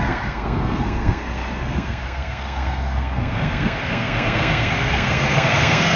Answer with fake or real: fake